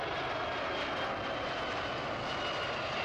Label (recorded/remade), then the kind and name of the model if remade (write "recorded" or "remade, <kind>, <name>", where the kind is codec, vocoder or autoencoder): recorded